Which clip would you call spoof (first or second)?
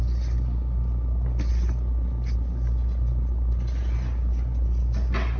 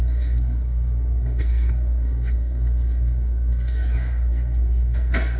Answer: second